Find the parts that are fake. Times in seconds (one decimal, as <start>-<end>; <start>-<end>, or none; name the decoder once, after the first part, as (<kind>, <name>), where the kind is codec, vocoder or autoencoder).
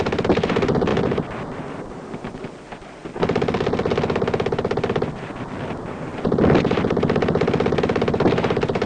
none